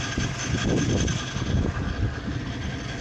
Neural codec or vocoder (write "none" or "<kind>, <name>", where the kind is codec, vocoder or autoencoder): none